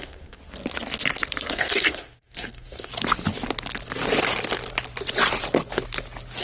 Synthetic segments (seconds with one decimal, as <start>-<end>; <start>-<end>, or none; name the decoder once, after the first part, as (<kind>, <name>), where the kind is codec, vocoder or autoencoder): 0.0-0.4 (codec, SNAC); 1.5-2.9